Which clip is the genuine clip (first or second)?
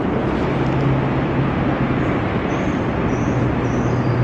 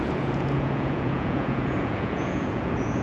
first